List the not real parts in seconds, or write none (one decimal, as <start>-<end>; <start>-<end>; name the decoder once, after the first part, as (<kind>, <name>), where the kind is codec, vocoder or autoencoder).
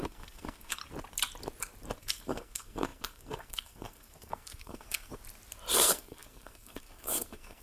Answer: 0.0-0.8 (codec, SNAC); 2.0-5.2; 5.7-7.6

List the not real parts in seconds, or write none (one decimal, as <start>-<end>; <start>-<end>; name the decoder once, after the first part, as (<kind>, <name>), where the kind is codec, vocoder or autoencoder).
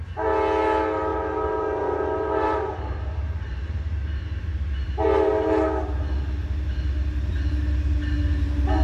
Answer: 1.1-5.6 (vocoder, BigVGAN v2)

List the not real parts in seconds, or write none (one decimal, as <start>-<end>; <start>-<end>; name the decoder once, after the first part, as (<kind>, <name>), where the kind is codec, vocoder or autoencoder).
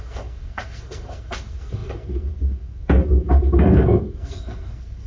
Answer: 0.0-5.1 (codec, SNAC)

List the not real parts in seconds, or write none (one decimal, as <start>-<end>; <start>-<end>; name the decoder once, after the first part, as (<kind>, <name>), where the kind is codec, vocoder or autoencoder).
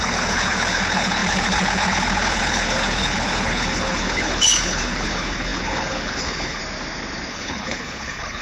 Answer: 0.0-6.6 (codec, HILCodec); 7.3-8.4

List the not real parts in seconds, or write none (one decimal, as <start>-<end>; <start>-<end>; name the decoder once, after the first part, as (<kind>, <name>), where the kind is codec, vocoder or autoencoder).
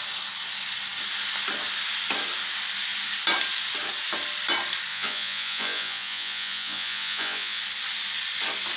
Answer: 4.9-7.6 (vocoder, Vocos)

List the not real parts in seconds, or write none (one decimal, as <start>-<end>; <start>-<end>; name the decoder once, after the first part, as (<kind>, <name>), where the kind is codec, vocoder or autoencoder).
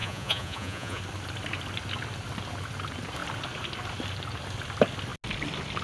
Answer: 0.0-1.0 (vocoder, Vocos)